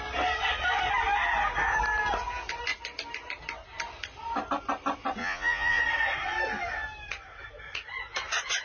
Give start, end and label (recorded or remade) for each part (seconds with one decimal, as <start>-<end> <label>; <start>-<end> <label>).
0.0-5.2 recorded; 5.2-5.8 remade; 5.8-8.6 recorded